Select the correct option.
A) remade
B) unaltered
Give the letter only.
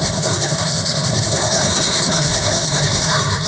A